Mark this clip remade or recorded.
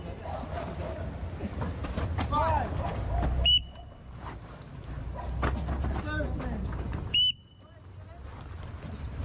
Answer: recorded